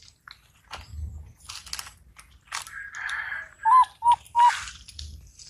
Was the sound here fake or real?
real